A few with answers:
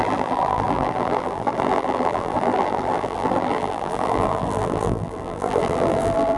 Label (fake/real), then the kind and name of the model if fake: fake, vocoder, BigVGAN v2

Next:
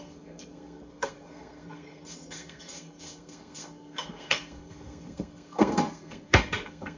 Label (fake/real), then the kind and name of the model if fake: fake, codec, SNAC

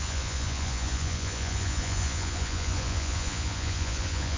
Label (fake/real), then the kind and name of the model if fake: fake, vocoder, Vocos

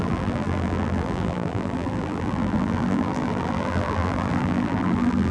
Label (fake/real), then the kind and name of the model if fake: fake, vocoder, BigVGAN v2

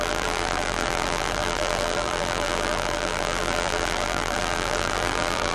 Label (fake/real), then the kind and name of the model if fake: fake, vocoder, BigVGAN v2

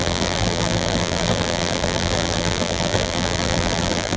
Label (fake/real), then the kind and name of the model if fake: fake, vocoder, BigVGAN v2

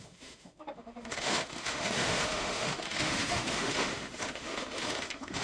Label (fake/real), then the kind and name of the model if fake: fake, autoencoder, DAC-VAE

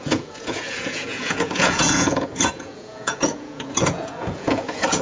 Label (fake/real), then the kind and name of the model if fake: fake, vocoder, Vocos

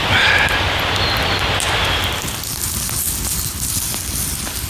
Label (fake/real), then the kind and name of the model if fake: real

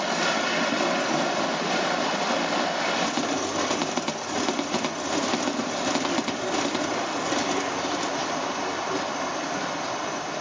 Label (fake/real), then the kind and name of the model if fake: real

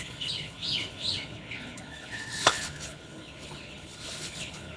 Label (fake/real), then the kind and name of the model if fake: fake, codec, HILCodec